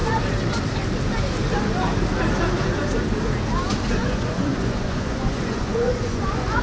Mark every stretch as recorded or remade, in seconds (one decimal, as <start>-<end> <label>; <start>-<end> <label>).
0.0-4.0 recorded; 4.0-6.6 remade